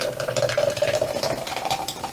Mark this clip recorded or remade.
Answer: remade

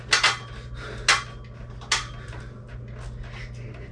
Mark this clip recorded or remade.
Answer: recorded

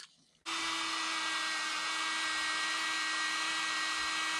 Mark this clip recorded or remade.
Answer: recorded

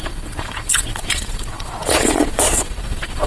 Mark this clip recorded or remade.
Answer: remade